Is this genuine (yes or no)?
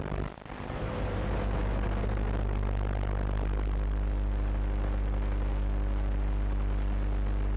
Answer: yes